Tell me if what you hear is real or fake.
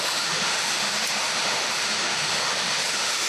fake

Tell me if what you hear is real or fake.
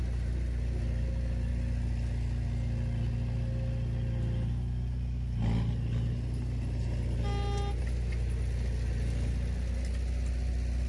real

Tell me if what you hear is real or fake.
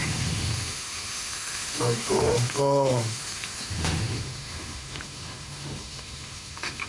fake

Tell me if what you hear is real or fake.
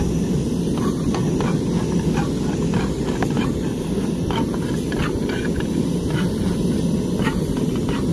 real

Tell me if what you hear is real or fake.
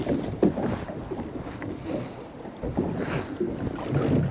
real